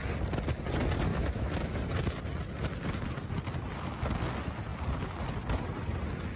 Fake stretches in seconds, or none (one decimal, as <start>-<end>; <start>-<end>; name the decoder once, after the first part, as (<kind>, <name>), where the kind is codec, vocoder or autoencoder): 1.1-1.8 (autoencoder, DAC-VAE)